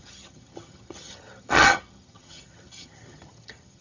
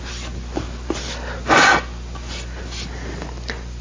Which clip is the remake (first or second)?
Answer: first